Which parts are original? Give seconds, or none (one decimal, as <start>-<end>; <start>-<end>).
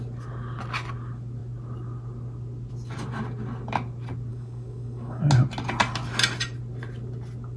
0.0-4.3; 5.2-7.6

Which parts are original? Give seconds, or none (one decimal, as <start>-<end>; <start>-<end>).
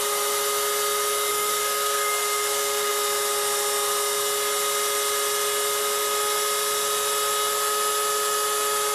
0.0-1.3; 2.9-8.9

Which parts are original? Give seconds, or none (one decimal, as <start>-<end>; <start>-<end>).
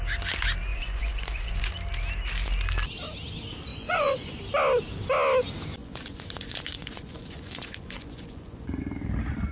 0.0-0.7; 1.7-3.7; 4.4-5.8; 8.8-9.5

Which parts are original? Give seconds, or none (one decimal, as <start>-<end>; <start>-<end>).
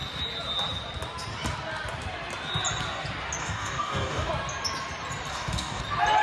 0.0-3.4; 4.3-5.3; 5.8-6.2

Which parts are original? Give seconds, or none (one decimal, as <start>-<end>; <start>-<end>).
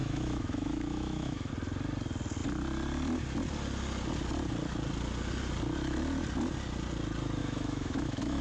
1.5-7.4